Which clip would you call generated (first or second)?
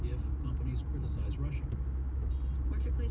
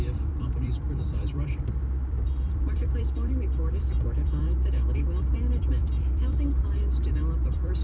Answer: second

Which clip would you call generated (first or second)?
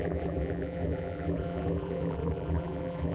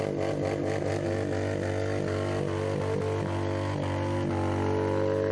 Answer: first